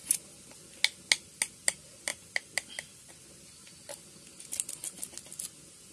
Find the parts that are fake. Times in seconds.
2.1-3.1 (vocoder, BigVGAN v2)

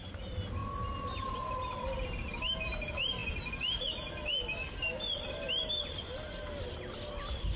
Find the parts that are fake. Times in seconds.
0.0-0.6 (vocoder, BigVGAN v2); 1.1-3.2; 3.8-7.6

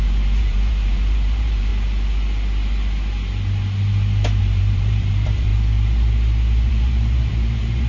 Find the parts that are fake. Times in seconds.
0.0-1.7 (vocoder, BigVGAN v2); 4.4-5.5; 6.7-7.9

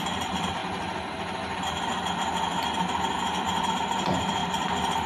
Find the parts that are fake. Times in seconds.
0.0-0.6 (vocoder, BigVGAN v2); 3.7-5.1

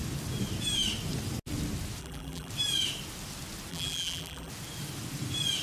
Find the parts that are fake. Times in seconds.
2.0-2.5 (vocoder, BigVGAN v2); 3.7-4.5